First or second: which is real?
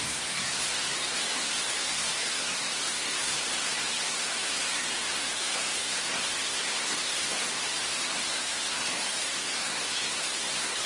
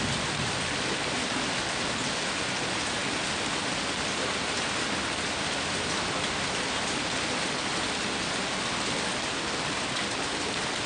second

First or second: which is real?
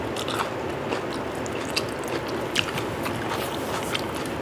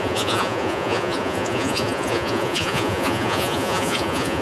first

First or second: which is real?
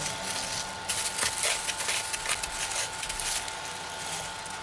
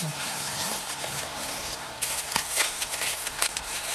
first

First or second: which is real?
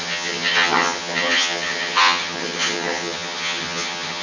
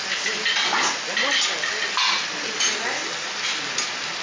second